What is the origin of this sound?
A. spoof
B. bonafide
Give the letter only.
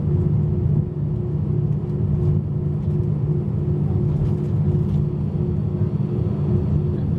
B